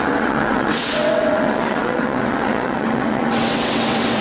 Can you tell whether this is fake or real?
fake